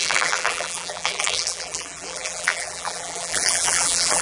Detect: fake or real fake